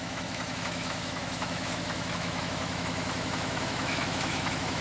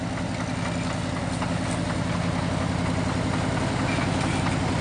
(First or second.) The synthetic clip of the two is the first